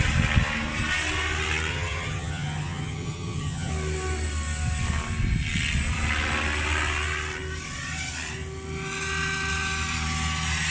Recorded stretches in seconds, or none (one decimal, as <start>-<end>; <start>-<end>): 0.0-1.7; 3.7-10.7